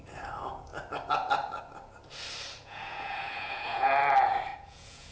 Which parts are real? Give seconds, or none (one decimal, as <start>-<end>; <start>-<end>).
0.0-2.6; 3.9-4.5